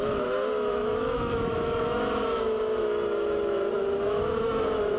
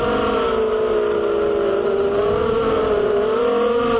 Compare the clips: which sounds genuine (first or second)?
second